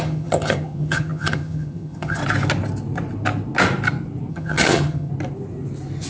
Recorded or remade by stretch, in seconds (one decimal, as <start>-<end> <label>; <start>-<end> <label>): 0.0-2.2 remade; 2.2-4.3 recorded; 4.3-5.1 remade; 5.1-6.1 recorded